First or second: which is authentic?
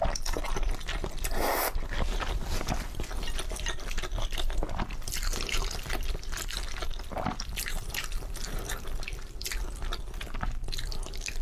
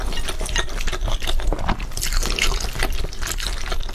second